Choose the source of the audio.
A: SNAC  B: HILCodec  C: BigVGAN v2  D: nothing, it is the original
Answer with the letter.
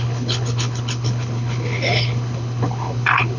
B